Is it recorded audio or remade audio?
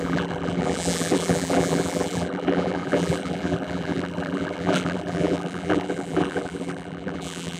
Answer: remade